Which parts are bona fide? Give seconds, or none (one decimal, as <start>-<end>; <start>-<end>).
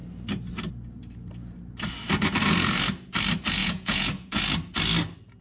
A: 0.0-3.6; 4.4-5.4